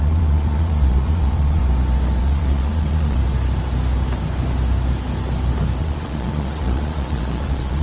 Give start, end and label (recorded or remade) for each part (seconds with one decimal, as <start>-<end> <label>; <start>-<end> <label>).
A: 0.0-1.6 remade; 1.6-2.2 recorded; 2.2-3.2 remade; 3.2-5.8 recorded; 5.8-7.8 remade